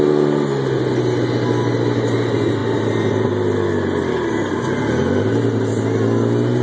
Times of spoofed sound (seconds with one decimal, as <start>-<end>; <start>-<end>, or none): none